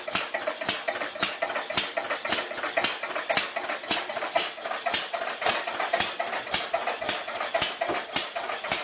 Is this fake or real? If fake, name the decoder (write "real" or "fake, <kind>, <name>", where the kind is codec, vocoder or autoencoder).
real